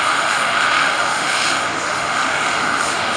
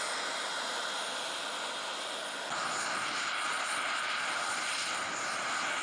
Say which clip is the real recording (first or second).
second